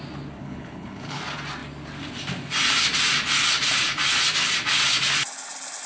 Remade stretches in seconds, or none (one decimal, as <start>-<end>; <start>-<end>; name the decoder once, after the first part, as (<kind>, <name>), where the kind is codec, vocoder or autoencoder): 0.4-1.2 (codec, HILCodec)